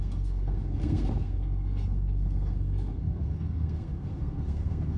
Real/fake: fake